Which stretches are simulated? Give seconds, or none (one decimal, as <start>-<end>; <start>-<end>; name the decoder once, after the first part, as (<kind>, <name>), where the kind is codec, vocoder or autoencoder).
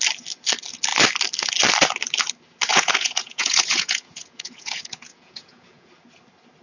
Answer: 2.7-5.9 (vocoder, Vocos)